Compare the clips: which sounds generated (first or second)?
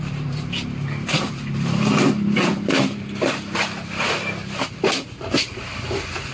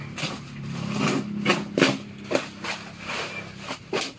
first